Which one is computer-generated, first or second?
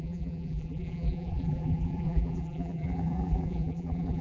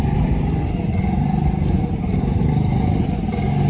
first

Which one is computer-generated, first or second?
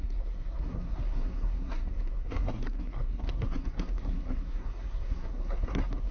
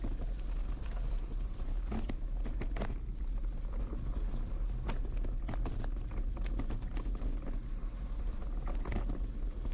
first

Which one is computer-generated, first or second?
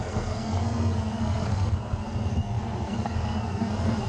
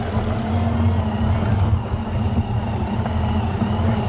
first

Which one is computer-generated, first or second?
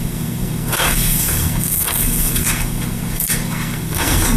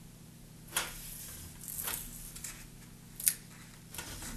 first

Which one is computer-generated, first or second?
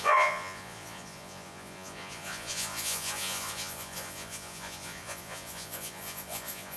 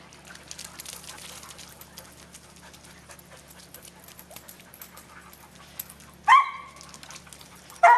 first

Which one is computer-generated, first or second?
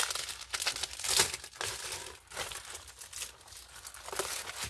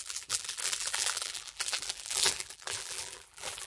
second